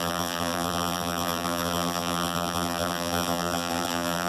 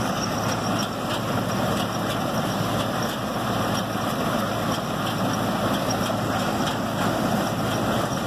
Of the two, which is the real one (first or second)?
second